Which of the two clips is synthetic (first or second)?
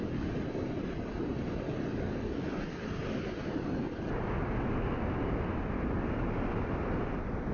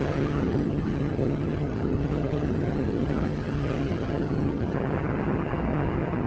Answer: second